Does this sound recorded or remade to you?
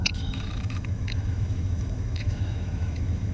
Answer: remade